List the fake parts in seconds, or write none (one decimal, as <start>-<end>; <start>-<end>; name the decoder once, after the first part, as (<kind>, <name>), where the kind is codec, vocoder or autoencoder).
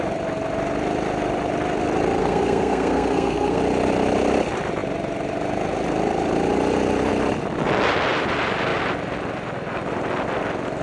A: 2.2-3.6 (codec, SNAC)